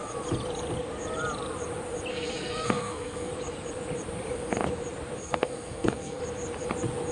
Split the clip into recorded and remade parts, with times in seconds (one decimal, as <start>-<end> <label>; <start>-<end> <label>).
0.0-2.1 recorded; 2.1-3.3 remade; 3.3-5.2 recorded; 5.2-6.2 remade; 6.2-7.1 recorded